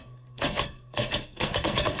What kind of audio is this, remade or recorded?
remade